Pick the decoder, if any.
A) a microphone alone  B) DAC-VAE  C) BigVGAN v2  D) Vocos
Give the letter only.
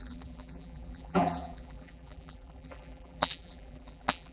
C